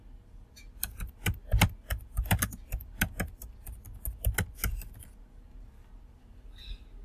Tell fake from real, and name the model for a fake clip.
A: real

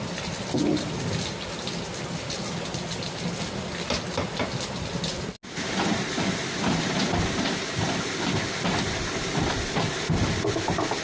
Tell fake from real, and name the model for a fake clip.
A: real